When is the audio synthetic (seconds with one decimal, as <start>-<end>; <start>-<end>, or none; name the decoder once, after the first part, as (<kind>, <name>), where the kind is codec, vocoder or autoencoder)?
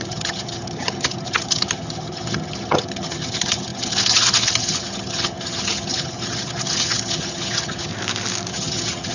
0.0-7.9 (vocoder, HiFi-GAN); 8.5-9.1